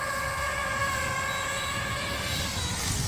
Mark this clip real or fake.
real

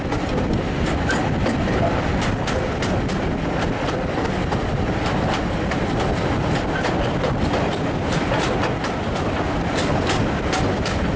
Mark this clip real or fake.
real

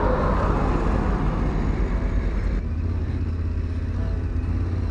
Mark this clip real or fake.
real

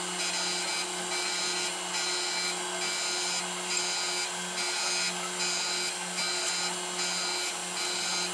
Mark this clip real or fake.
real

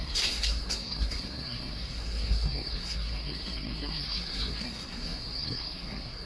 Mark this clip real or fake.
fake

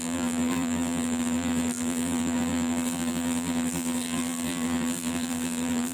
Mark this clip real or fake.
fake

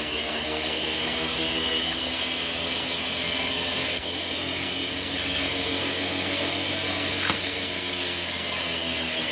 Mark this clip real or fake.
fake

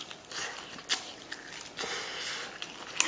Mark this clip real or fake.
real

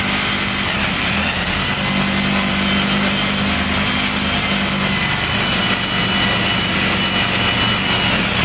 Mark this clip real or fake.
real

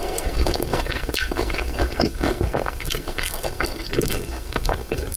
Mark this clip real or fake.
fake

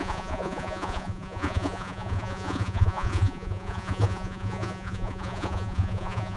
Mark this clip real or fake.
fake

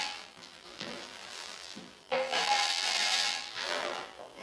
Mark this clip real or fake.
fake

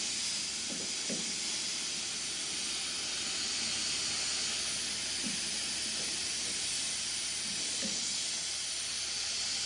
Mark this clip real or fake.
real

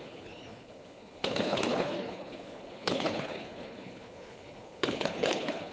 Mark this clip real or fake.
fake